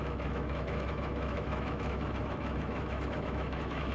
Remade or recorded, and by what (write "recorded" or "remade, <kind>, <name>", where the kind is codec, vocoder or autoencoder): remade, autoencoder, DAC-VAE